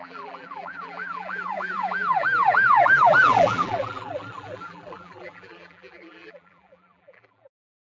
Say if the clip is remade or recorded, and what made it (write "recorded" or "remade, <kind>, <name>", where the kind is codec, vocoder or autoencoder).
remade, vocoder, BigVGAN v2